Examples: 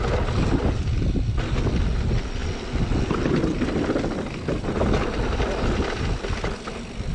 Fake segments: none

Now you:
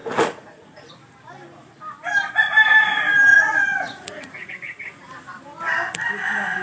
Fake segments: 0.0-0.9; 3.3-4.5

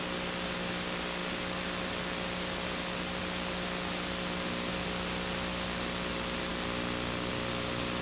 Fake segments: none

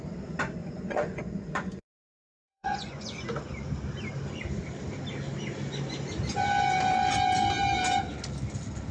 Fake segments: 0.6-3.4

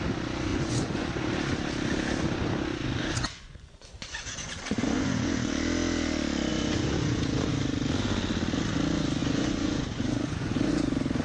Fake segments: 0.5-1.1; 3.0-5.5; 6.5-7.5; 9.2-10.7

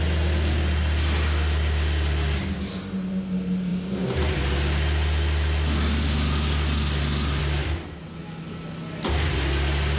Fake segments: none

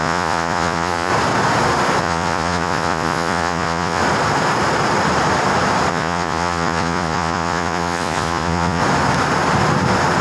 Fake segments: 0.0-1.1; 2.0-4.0; 5.9-8.8